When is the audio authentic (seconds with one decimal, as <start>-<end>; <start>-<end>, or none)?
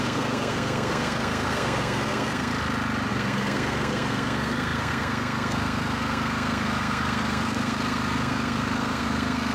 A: 2.5-3.1